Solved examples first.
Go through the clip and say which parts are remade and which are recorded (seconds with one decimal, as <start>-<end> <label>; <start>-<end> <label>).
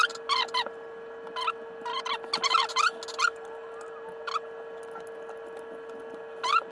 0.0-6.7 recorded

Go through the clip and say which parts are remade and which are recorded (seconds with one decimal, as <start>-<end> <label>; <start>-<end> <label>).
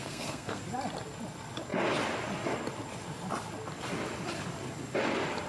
0.0-0.6 remade; 0.6-5.5 recorded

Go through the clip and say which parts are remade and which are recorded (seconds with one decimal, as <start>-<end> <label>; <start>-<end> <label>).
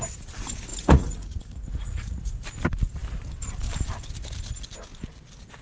0.0-0.7 recorded; 0.7-2.3 remade; 2.3-5.6 recorded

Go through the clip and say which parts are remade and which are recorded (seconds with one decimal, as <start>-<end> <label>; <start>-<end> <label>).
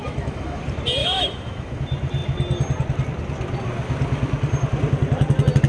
0.0-0.6 remade; 0.6-1.0 recorded; 1.0-1.8 remade; 1.8-5.7 recorded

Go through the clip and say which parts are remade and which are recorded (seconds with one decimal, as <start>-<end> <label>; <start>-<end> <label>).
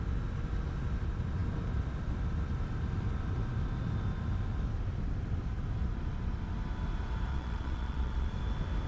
0.0-7.3 recorded; 7.3-8.4 remade; 8.4-8.9 recorded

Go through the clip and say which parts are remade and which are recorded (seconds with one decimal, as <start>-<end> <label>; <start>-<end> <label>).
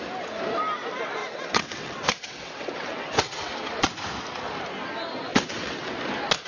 0.0-1.2 recorded; 1.2-3.5 remade; 3.5-5.3 recorded; 5.3-5.9 remade; 5.9-6.5 recorded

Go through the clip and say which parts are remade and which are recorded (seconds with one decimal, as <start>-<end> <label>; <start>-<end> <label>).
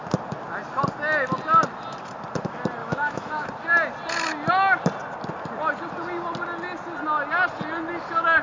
0.0-2.8 recorded; 2.8-3.5 remade; 3.5-8.4 recorded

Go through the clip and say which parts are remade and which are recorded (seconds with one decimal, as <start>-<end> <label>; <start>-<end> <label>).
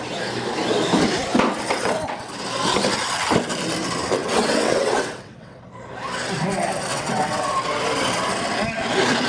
0.0-4.2 recorded; 4.2-5.6 remade; 5.6-6.9 recorded; 6.9-7.4 remade; 7.4-9.3 recorded